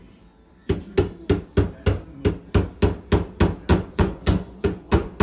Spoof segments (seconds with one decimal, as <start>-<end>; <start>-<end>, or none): 3.7-5.2